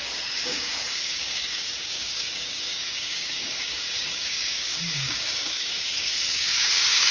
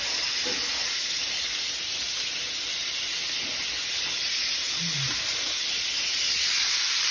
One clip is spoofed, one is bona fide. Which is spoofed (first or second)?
first